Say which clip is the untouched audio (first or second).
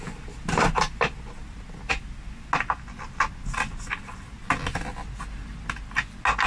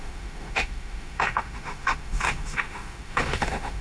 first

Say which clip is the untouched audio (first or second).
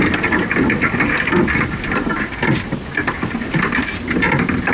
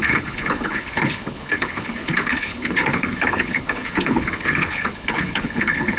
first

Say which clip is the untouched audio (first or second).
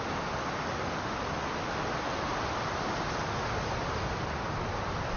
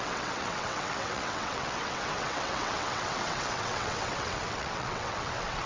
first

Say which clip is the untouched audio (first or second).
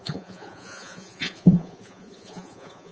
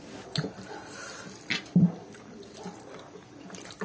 second